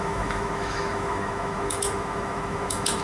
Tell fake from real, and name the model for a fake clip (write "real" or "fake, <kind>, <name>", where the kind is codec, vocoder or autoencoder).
fake, autoencoder, DAC-VAE